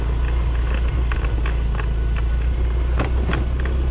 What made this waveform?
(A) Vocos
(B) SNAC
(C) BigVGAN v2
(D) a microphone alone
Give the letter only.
D